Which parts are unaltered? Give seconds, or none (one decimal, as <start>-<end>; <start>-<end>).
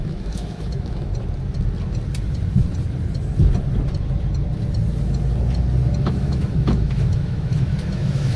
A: 1.1-6.1